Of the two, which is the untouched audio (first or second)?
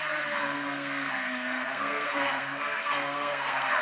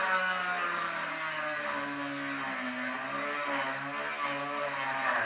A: second